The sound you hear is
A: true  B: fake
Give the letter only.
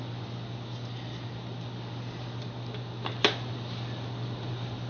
A